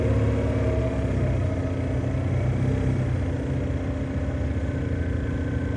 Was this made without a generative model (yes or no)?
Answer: yes